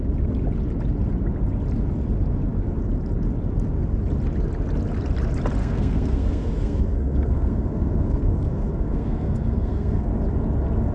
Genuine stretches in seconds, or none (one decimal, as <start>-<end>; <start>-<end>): 0.0-5.6; 10.1-10.9